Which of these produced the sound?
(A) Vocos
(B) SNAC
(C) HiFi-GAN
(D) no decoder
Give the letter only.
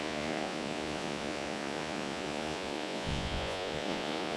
A